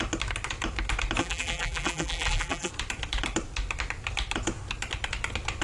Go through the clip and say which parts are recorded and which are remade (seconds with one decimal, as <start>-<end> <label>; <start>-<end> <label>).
0.0-1.2 recorded; 1.2-2.7 remade; 2.7-5.6 recorded

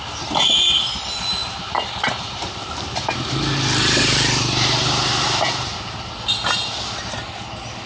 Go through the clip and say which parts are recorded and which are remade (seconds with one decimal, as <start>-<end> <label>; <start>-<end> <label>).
0.0-1.4 recorded; 1.4-5.9 remade; 5.9-7.9 recorded